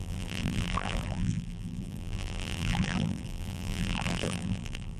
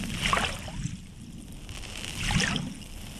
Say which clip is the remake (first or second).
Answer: first